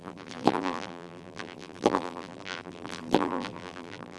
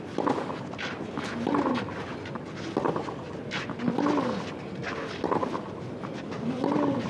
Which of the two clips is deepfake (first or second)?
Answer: first